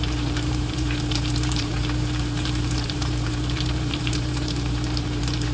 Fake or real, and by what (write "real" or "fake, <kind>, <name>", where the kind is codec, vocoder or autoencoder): fake, vocoder, BigVGAN v2